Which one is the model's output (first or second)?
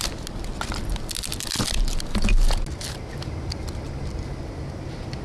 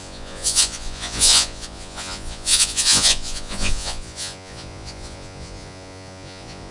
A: second